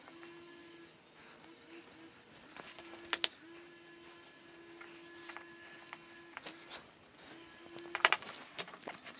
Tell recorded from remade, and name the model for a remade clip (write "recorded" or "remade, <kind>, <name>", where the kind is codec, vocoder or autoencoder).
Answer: recorded